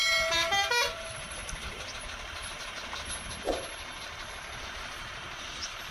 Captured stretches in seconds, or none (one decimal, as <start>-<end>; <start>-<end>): 1.4-4.6